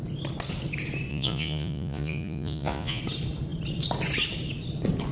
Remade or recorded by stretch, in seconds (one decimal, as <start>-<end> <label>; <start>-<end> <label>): 0.0-1.1 recorded; 1.1-3.0 remade; 3.0-5.1 recorded